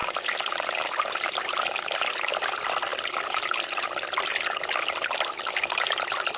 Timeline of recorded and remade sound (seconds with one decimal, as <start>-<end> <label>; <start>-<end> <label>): 0.0-6.4 recorded